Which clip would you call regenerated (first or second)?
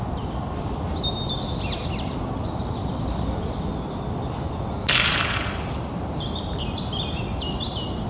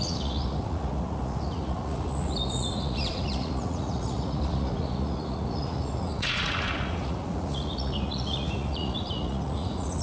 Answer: second